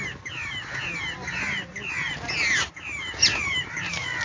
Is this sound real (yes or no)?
yes